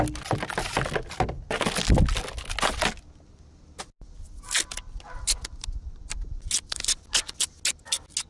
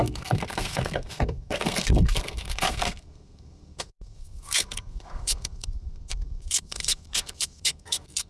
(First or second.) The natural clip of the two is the first